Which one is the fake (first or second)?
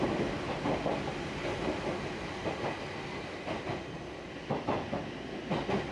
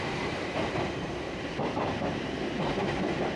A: second